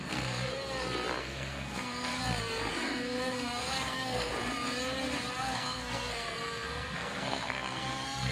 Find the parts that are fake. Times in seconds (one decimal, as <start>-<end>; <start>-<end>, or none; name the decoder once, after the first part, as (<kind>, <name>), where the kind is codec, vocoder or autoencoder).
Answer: 0.0-0.5 (codec, SNAC); 1.2-2.1; 2.7-4.3; 5.4-8.3